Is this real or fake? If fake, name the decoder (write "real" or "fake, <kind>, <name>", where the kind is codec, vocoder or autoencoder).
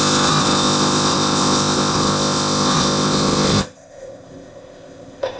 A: fake, codec, ZipCodec